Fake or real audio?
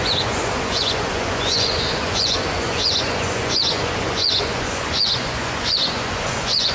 fake